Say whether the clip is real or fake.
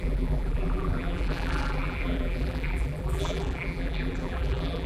fake